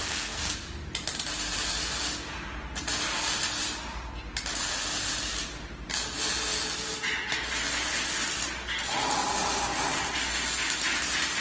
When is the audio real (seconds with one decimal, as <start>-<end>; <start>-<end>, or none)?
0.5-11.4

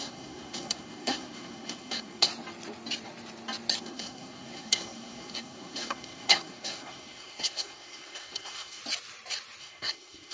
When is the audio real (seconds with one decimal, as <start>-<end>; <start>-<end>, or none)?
2.3-3.8; 8.8-9.6

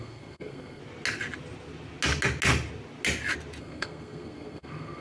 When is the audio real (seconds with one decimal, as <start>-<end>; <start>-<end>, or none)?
0.8-3.6

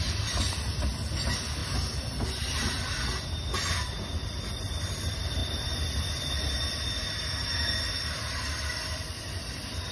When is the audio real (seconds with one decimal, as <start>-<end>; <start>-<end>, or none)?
0.0-9.9

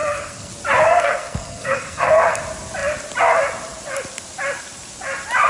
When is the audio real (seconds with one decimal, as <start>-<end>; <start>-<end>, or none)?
0.5-0.9; 2.4-5.5